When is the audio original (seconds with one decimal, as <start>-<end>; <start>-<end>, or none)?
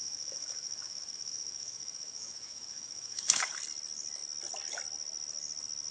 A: 3.5-5.9